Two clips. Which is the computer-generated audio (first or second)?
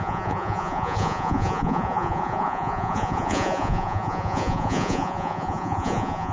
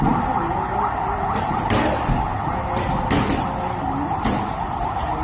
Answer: first